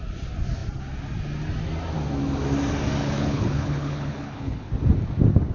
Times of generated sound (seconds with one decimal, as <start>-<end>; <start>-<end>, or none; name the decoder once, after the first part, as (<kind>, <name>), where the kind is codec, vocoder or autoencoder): 3.0-4.7 (codec, HILCodec)